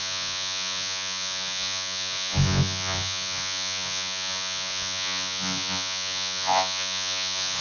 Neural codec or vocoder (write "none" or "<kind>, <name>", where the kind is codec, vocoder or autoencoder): vocoder, Vocos